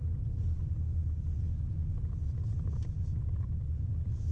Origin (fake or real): real